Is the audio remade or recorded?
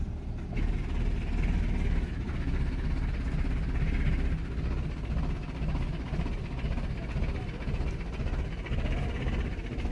recorded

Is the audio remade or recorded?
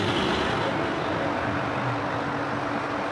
recorded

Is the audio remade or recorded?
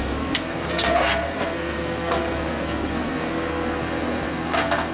remade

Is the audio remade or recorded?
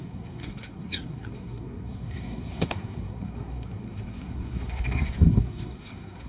remade